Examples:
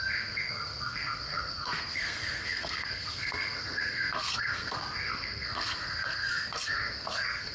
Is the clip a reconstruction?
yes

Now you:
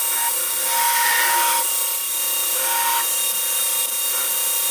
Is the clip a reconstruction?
no